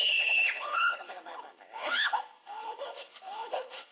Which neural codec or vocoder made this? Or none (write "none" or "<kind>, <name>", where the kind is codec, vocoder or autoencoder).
codec, HILCodec